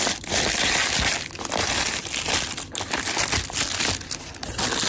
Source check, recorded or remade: recorded